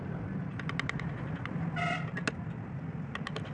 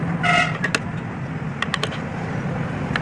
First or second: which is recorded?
second